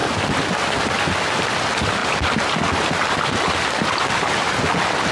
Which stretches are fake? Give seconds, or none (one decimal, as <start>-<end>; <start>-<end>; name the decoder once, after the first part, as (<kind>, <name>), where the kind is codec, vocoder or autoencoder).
none